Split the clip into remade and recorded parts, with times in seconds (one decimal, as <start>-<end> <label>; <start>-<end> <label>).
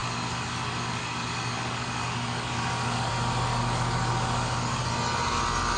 0.0-3.1 remade; 3.1-3.5 recorded; 3.5-4.9 remade; 4.9-5.8 recorded